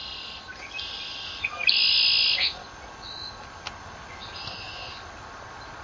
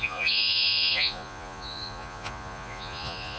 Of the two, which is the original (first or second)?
first